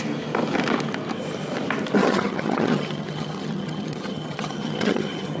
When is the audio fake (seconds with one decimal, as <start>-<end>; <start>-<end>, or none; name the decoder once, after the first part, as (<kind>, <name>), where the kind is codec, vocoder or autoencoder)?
2.0-5.4 (vocoder, HiFi-GAN)